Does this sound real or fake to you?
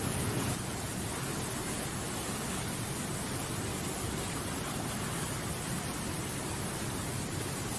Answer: real